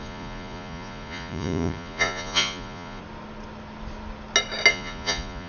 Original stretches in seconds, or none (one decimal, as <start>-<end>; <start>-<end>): 3.0-4.7